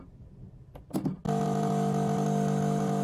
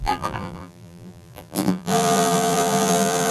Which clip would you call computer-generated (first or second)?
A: second